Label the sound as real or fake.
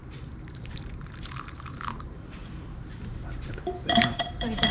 fake